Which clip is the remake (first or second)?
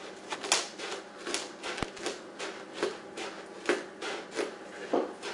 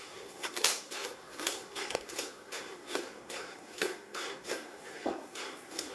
second